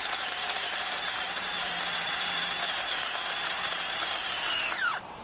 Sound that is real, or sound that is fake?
fake